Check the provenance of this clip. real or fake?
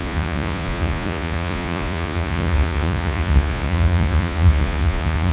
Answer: fake